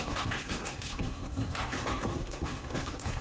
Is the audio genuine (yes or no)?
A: no